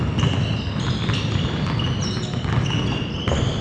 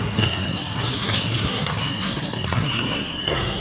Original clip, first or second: first